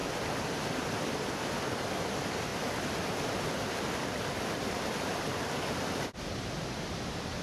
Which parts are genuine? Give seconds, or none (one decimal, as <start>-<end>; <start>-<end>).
1.0-2.5; 3.4-7.4